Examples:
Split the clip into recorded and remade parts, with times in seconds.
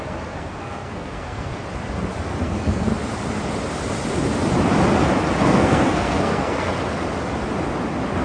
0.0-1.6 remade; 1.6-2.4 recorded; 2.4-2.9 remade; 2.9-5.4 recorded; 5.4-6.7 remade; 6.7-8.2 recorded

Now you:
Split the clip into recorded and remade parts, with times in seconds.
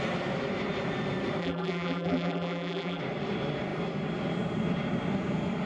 0.0-1.4 recorded; 1.4-3.0 remade; 3.0-5.7 recorded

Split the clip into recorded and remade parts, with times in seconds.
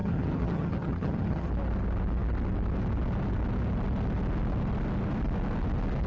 0.0-1.5 remade; 1.5-6.1 recorded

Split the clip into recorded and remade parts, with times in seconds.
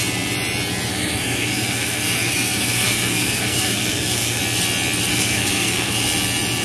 0.0-0.9 recorded; 0.9-4.4 remade; 4.4-5.1 recorded; 5.1-6.0 remade; 6.0-6.6 recorded